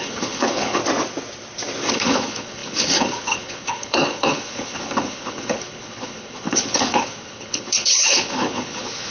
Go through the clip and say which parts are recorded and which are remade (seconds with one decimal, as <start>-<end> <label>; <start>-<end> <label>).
0.0-0.8 remade; 0.8-1.9 recorded; 1.9-9.1 remade